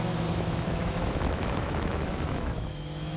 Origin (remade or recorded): remade